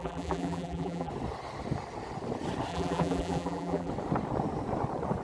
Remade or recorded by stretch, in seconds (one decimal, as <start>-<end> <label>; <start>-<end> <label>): 0.0-1.1 remade; 1.1-2.7 recorded; 2.7-3.9 remade; 3.9-5.2 recorded